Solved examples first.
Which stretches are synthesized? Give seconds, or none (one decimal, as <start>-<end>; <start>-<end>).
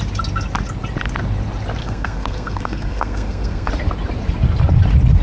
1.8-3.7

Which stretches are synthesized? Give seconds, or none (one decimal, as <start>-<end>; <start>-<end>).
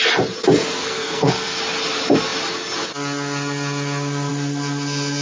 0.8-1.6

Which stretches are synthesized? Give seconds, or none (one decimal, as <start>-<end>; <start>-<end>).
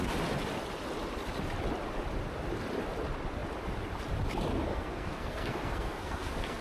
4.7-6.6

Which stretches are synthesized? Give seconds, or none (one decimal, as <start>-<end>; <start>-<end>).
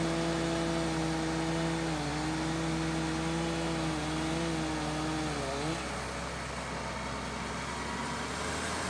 none